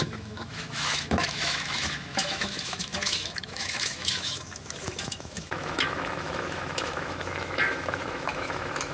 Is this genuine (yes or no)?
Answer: no